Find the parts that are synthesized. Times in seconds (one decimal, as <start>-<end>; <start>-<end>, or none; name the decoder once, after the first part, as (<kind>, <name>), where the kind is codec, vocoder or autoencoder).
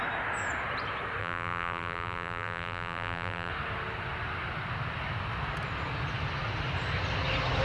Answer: 1.2-3.5 (vocoder, BigVGAN v2)